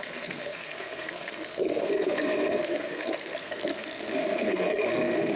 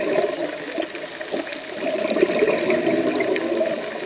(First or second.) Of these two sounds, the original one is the second